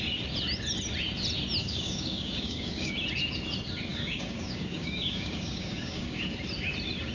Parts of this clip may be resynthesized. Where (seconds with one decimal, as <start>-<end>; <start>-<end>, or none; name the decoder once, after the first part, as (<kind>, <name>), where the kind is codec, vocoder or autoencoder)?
1.6-2.9 (codec, DAC); 3.9-6.2